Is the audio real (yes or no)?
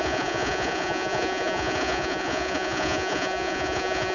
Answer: no